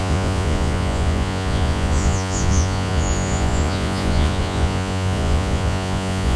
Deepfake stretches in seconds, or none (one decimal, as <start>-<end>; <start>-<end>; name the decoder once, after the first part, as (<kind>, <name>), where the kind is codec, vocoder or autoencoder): 0.0-6.4 (vocoder, Vocos)